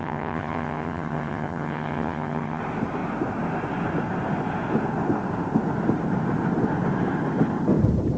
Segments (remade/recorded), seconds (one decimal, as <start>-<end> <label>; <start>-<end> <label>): 0.0-2.6 remade; 2.6-8.2 recorded